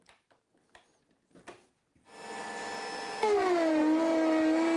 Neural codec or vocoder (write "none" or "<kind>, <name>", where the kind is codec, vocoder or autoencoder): none